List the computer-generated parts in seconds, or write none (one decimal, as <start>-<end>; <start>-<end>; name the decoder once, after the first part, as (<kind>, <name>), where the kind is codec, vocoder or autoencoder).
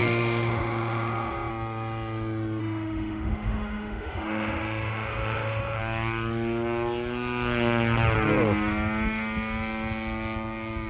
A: 0.0-1.5 (autoencoder, DAC-VAE); 2.6-5.8